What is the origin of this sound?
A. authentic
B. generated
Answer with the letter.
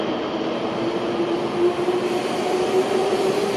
A